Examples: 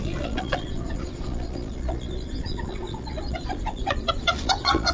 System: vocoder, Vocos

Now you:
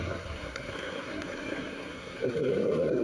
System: codec, SNAC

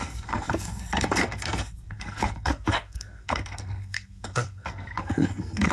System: codec, SNAC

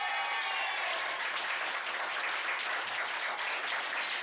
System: none